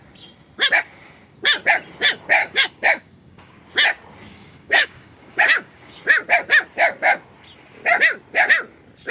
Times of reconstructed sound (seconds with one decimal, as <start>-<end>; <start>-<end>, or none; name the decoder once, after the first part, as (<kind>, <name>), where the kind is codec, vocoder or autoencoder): 2.4-3.6 (codec, DAC); 4.3-6.0